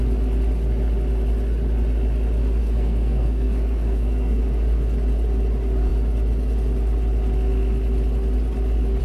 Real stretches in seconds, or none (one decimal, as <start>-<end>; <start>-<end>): 0.0-2.6; 4.4-9.0